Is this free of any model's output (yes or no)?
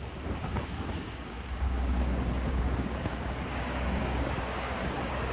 no